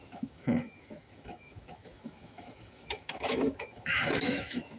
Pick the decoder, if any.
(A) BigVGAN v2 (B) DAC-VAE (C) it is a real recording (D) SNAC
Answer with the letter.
B